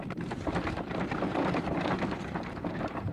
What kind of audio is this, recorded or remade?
remade